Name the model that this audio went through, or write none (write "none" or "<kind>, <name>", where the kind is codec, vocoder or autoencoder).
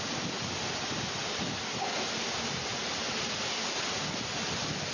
none